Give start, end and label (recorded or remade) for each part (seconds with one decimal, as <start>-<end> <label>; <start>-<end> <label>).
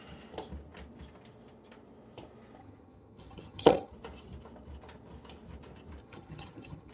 0.0-2.6 recorded; 2.6-3.9 remade; 3.9-6.0 recorded; 6.0-6.9 remade